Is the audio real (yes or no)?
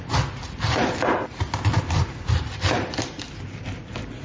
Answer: yes